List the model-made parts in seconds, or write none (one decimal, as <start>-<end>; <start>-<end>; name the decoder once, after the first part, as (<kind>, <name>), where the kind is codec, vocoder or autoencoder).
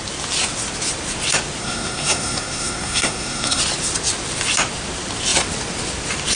1.6-3.6 (codec, SNAC)